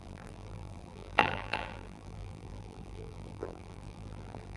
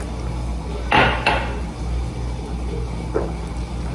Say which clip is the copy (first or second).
first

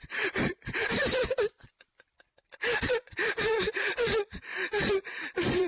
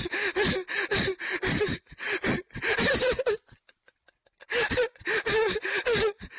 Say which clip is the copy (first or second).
first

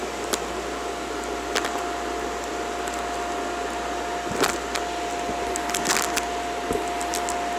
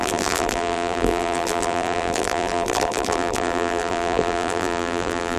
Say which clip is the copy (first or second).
second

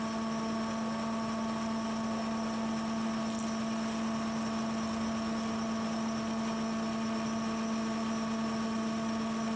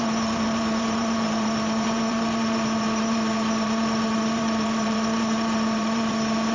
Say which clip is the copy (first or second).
second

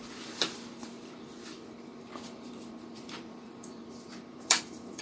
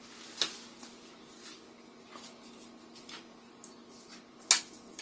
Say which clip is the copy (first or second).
first